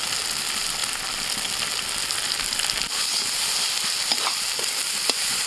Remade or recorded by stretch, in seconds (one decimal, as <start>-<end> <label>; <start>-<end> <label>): 0.0-5.5 recorded